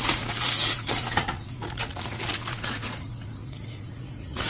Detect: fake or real fake